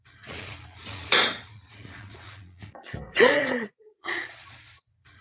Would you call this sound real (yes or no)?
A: no